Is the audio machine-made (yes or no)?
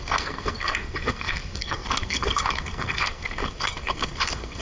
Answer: yes